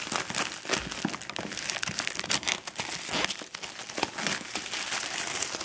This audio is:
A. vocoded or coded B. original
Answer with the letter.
B